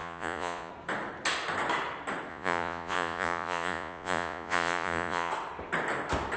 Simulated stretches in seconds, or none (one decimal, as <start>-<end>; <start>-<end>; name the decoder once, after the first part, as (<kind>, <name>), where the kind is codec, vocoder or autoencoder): 0.0-0.7 (vocoder, Vocos); 2.3-5.3